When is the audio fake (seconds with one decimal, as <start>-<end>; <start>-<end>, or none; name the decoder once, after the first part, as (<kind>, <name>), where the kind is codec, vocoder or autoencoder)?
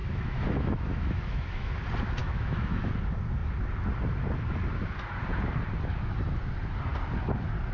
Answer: 0.0-1.7 (autoencoder, DAC-VAE); 2.2-2.9